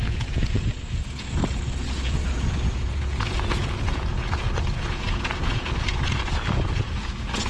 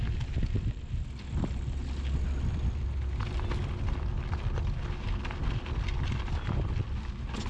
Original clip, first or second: second